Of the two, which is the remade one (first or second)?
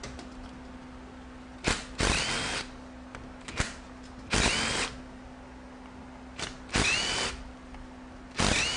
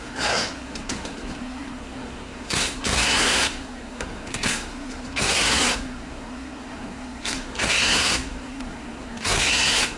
second